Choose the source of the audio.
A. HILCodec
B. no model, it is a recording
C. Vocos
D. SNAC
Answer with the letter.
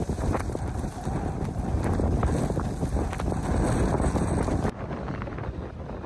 B